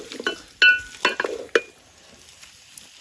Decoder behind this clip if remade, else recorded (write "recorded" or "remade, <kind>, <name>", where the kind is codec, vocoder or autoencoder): recorded